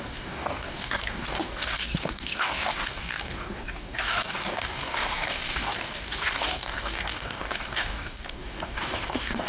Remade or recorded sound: remade